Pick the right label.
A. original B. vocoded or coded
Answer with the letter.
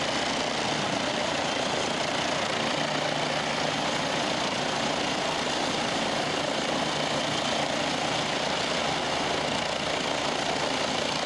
A